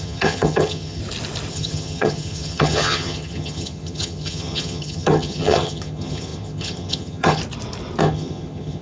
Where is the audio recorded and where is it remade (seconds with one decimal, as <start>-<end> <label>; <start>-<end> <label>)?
0.0-1.0 remade; 1.0-1.5 recorded; 1.5-7.4 remade; 7.4-8.0 recorded; 8.0-8.8 remade

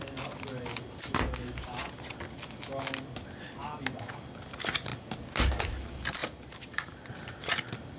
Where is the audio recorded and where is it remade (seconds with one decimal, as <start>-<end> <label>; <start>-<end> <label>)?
0.0-6.2 recorded; 6.2-7.1 remade; 7.1-8.0 recorded